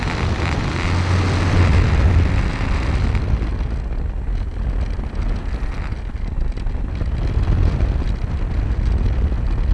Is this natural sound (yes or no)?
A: yes